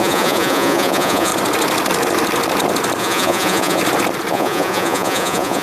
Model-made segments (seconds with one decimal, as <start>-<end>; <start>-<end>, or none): 0.0-1.3; 3.0-3.8; 4.3-5.6